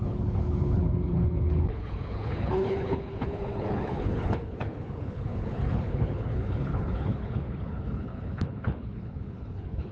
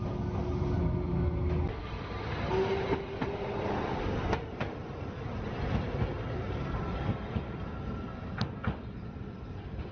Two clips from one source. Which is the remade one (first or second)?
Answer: first